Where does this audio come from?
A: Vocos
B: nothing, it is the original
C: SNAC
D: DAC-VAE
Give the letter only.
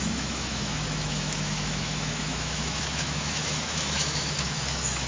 D